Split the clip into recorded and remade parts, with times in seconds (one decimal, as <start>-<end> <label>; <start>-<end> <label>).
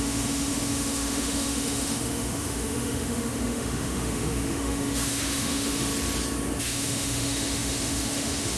0.0-5.9 remade; 5.9-6.6 recorded; 6.6-8.6 remade